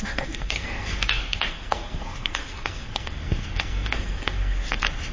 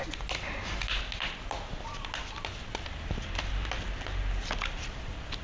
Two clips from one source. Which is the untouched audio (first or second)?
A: second